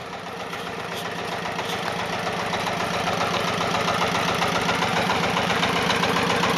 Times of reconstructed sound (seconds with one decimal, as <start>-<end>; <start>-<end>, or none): 0.0-0.8; 4.9-5.5